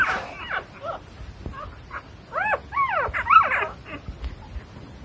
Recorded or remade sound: recorded